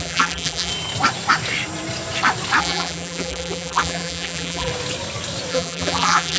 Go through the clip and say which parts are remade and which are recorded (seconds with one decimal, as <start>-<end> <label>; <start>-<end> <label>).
0.0-0.7 remade; 0.7-2.6 recorded; 2.6-4.7 remade; 4.7-5.5 recorded; 5.5-6.4 remade